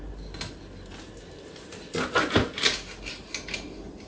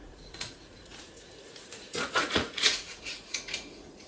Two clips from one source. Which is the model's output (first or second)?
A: second